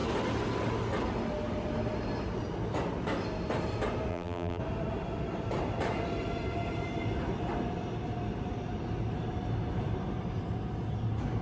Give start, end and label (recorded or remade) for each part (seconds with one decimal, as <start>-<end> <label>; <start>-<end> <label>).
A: 0.0-4.1 recorded; 4.1-4.6 remade; 4.6-11.4 recorded